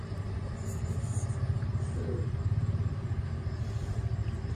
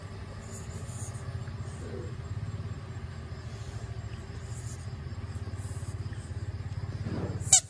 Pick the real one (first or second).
second